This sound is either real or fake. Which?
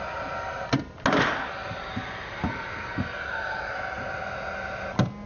real